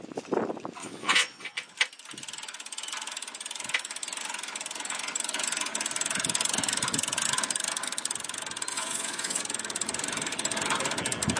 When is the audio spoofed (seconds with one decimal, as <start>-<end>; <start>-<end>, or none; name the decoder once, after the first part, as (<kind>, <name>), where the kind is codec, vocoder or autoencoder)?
0.8-1.7 (vocoder, Vocos); 8.7-9.4